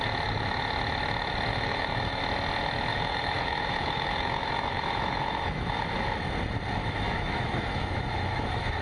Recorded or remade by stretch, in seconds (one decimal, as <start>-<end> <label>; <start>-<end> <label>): 0.0-1.5 recorded; 1.5-2.2 remade; 2.2-2.9 recorded; 2.9-5.8 remade; 5.8-6.8 recorded; 6.8-8.8 remade